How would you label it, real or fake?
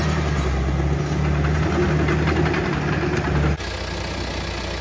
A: real